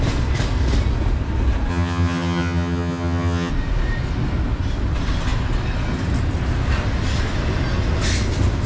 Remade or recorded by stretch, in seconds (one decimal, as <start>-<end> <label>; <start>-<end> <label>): 0.0-1.7 recorded; 1.7-3.5 remade; 3.5-8.7 recorded